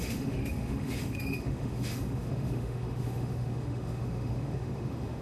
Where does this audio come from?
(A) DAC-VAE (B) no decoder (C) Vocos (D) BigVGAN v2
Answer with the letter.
A